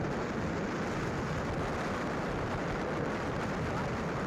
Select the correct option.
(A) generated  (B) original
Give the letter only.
B